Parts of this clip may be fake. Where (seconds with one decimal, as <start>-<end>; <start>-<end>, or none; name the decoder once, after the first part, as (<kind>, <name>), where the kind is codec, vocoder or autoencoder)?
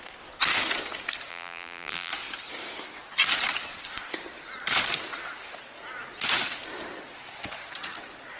1.3-2.1 (vocoder, BigVGAN v2)